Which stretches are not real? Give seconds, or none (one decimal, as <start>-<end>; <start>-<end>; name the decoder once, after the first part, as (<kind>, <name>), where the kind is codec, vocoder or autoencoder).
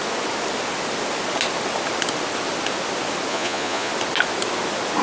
3.3-3.9 (vocoder, Vocos)